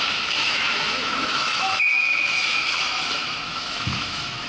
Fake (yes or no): yes